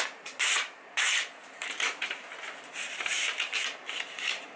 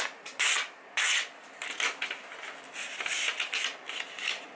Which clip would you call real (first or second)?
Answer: second